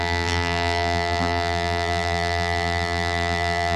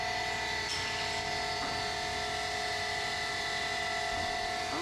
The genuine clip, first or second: second